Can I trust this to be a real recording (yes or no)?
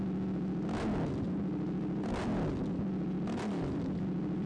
yes